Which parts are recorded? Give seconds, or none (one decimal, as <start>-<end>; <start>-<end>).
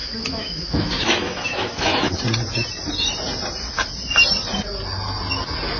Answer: 2.2-5.8